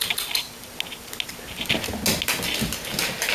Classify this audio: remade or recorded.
recorded